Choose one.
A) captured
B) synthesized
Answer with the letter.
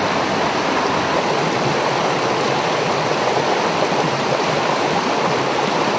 A